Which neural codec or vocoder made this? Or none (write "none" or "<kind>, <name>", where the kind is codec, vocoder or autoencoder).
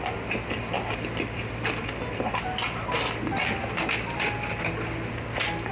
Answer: none